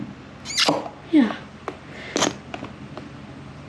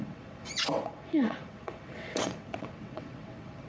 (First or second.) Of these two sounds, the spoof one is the second